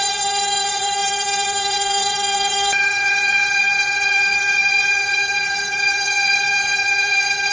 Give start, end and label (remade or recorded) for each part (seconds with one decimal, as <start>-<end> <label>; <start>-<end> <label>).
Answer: 0.0-7.5 remade